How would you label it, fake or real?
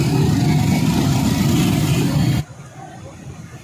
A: real